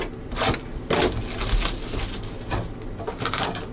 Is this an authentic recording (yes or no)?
yes